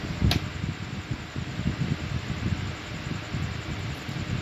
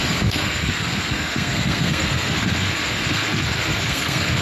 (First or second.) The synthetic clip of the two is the second